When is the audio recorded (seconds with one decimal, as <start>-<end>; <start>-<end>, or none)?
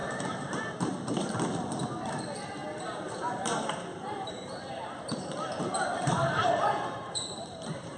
1.3-3.9